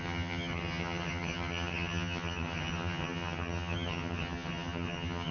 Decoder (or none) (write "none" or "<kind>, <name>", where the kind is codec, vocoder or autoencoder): vocoder, HiFi-GAN